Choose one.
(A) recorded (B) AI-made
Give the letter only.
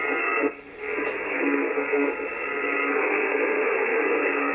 B